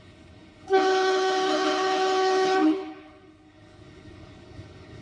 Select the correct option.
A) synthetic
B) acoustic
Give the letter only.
A